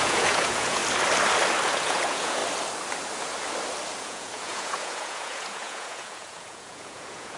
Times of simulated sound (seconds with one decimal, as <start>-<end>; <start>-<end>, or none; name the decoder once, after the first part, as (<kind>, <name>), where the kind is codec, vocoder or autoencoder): 0.0-0.8 (vocoder, Vocos); 1.7-2.4; 4.0-7.4